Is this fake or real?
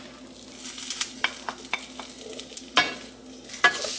real